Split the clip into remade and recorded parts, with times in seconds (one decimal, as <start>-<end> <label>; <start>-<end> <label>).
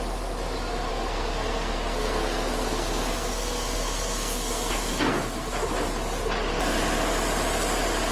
0.0-0.9 recorded; 0.9-5.5 remade; 5.5-8.1 recorded